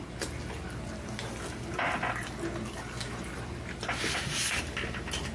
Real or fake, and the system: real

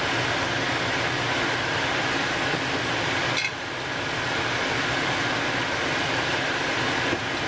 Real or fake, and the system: real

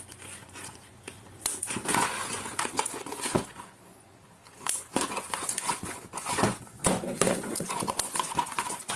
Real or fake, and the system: fake, vocoder, Vocos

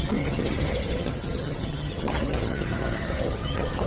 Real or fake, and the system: fake, vocoder, HiFi-GAN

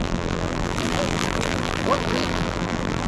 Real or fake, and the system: fake, vocoder, BigVGAN v2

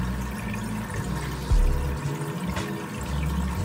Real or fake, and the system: real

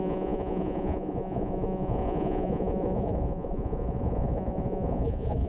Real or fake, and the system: fake, vocoder, Vocos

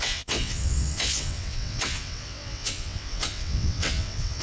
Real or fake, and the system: fake, vocoder, WaveNeXt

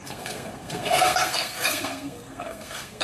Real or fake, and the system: fake, codec, SNAC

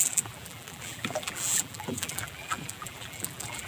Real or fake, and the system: fake, vocoder, BigVGAN v2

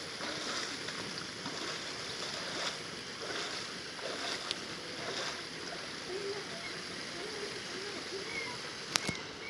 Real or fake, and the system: real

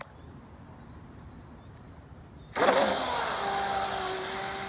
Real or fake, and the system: real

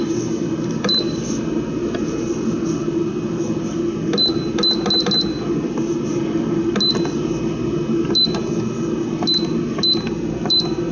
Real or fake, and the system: real